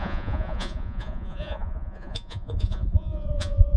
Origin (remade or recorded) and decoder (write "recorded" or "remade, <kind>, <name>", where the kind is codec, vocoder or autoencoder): remade, vocoder, Vocos